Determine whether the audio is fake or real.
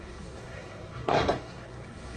fake